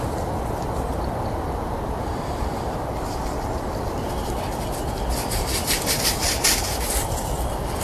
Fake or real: real